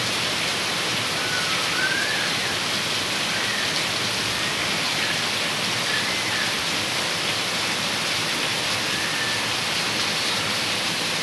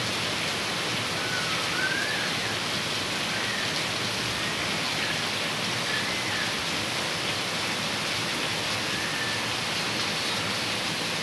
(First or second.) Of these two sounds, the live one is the second